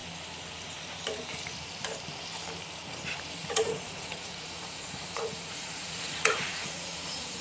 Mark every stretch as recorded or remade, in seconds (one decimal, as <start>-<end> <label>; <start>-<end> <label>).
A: 0.0-3.4 recorded; 3.4-7.4 remade

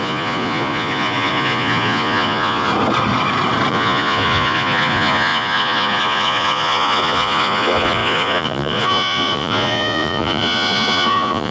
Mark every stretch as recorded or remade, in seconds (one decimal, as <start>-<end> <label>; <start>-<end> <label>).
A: 0.0-2.7 remade; 2.7-3.7 recorded; 3.7-11.5 remade